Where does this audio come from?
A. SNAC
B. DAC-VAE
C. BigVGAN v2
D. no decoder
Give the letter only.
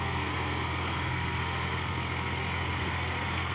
A